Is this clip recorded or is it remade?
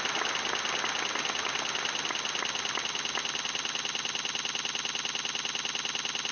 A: recorded